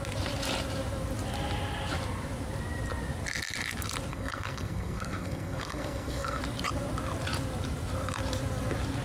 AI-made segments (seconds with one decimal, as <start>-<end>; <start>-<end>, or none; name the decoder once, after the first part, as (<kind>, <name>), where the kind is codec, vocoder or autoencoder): 4.1-6.4 (codec, SNAC)